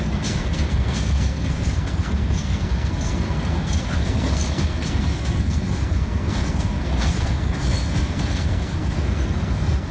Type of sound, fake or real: fake